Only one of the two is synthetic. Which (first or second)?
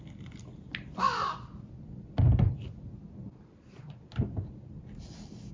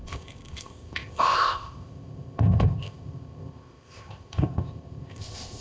second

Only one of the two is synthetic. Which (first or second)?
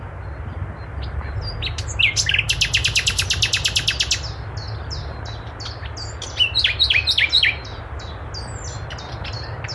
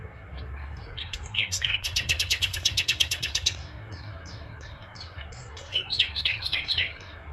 second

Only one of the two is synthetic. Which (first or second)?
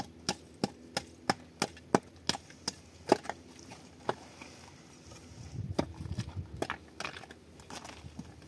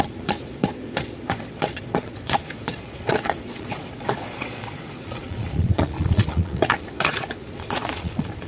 second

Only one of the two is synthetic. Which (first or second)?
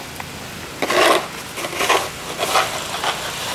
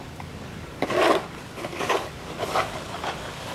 second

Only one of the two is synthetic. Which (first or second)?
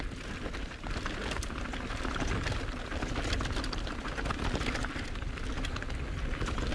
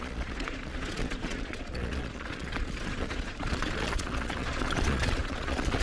second